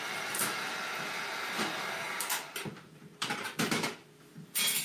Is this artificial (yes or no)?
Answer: no